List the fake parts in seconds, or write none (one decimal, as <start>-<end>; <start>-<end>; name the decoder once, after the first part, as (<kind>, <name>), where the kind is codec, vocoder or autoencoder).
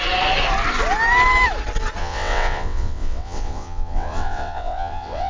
2.0-5.3 (vocoder, WaveNeXt)